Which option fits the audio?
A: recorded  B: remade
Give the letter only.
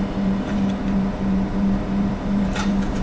B